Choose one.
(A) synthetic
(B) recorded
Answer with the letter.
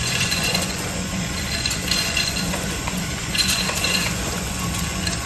A